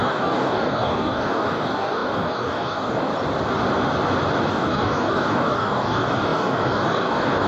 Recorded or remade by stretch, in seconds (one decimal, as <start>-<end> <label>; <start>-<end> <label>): 0.0-3.1 remade; 3.1-4.5 recorded; 4.5-7.5 remade